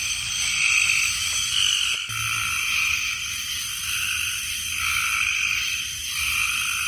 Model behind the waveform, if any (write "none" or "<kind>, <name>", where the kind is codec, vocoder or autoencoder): none